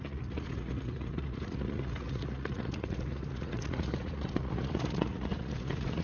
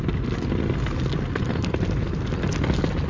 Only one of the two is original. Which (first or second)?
second